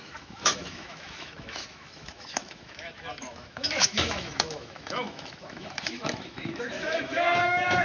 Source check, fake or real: fake